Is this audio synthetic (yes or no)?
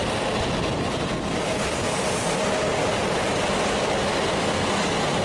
no